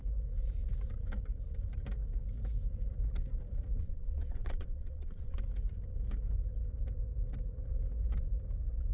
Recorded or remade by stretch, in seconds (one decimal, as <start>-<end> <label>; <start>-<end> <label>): 0.0-3.8 recorded; 3.8-5.4 remade; 5.4-8.9 recorded